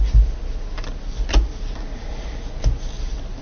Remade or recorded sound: recorded